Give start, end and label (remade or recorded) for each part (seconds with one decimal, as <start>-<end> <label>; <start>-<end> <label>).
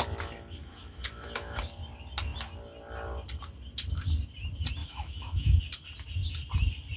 0.0-0.6 recorded; 0.6-1.6 remade; 1.6-4.8 recorded; 4.8-5.6 remade; 5.6-7.0 recorded